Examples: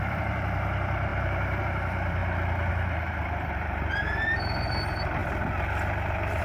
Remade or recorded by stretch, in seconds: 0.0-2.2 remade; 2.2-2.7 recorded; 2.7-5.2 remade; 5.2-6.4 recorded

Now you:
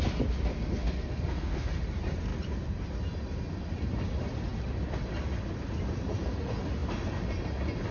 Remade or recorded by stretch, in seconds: 0.0-0.5 recorded; 0.5-1.8 remade; 1.8-7.9 recorded